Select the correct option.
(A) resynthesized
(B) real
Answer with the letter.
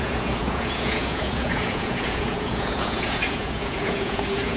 A